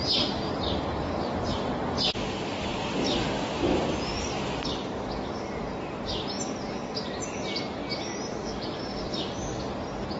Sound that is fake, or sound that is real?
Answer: real